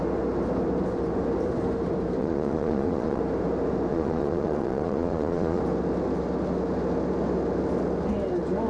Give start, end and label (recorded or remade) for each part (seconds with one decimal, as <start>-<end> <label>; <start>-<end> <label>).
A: 0.0-2.2 recorded; 2.2-3.2 remade; 3.2-3.9 recorded; 3.9-5.6 remade; 5.6-8.7 recorded